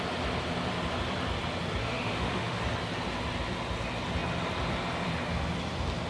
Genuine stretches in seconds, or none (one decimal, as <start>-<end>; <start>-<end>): 0.0-1.8; 2.6-6.1